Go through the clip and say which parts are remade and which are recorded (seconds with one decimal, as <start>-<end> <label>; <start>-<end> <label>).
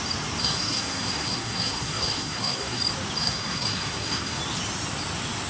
0.0-0.4 recorded; 0.4-2.8 remade; 2.8-3.2 recorded; 3.2-4.4 remade; 4.4-5.5 recorded